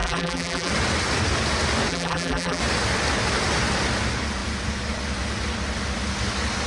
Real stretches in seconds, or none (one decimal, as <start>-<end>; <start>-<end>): 0.7-1.9; 2.6-6.7